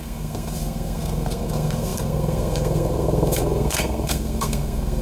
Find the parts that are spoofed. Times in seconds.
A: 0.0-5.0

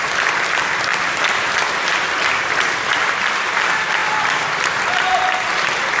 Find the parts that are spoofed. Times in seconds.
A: none

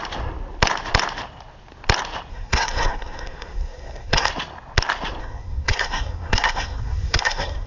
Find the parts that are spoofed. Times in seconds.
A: 2.3-4.3; 5.2-7.7

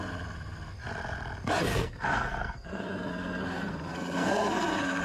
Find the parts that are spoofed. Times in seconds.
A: 1.7-5.0

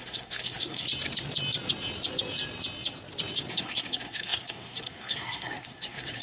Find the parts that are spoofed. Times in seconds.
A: 0.0-0.9; 3.5-6.2

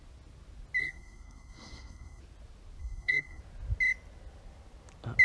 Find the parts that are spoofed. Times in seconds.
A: 0.8-2.2; 2.8-3.4

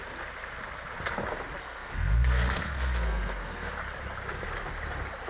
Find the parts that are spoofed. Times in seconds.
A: 1.6-3.7

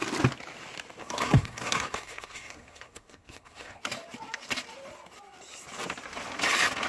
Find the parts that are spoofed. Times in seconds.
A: 1.0-3.8